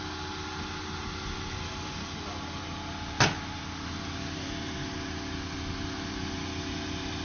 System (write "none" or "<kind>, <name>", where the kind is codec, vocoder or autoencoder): none